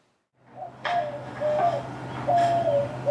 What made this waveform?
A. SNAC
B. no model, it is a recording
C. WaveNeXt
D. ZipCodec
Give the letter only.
B